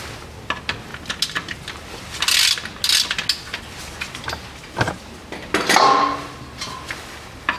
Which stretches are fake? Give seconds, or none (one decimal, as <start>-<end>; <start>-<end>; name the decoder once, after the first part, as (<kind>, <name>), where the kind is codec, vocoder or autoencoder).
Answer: none

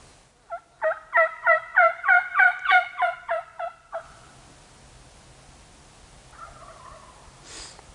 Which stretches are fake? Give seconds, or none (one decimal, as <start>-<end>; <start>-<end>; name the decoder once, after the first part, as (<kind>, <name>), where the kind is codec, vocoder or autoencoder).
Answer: 1.4-4.3 (vocoder, Vocos)

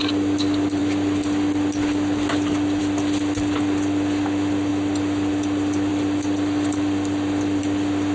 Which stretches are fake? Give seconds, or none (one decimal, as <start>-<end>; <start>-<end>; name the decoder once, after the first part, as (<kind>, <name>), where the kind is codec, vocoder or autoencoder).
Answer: 5.9-7.6 (vocoder, BigVGAN v2)